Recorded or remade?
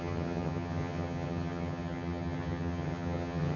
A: remade